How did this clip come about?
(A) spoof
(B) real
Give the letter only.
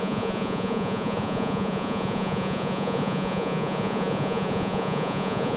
A